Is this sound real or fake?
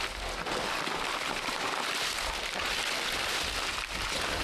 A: real